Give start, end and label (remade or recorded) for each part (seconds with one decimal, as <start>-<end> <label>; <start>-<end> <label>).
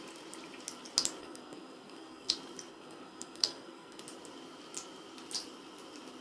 0.0-1.2 recorded; 1.2-2.3 remade; 2.3-2.7 recorded; 2.7-4.0 remade; 4.0-6.2 recorded